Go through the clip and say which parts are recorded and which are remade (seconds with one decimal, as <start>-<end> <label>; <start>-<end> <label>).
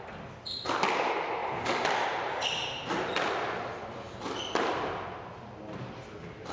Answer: 0.0-6.5 recorded